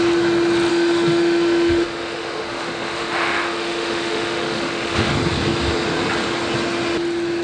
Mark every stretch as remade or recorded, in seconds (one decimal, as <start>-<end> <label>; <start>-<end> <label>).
0.0-0.7 recorded; 0.7-5.1 remade; 5.1-7.4 recorded